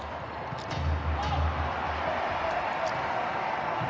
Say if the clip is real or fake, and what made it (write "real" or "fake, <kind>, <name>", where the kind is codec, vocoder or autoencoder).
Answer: real